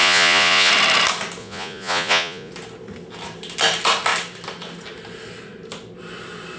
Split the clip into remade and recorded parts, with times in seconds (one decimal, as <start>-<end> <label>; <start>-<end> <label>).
0.0-0.7 remade; 0.7-1.4 recorded; 1.4-2.5 remade; 2.5-6.6 recorded